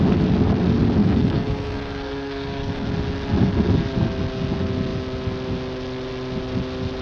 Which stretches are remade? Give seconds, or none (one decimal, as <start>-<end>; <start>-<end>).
1.0-2.9